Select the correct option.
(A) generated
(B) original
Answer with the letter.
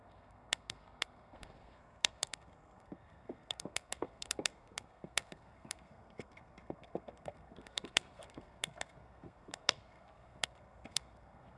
A